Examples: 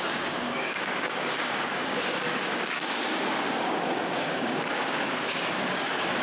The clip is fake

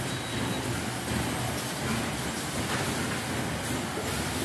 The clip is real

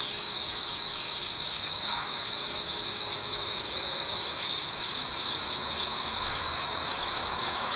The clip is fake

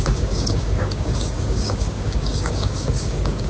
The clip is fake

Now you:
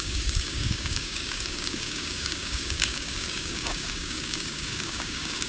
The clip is fake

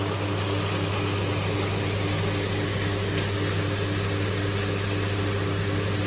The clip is real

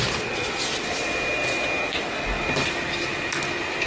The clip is real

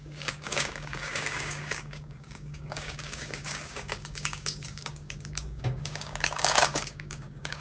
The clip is fake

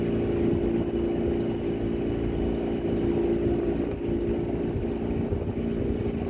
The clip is real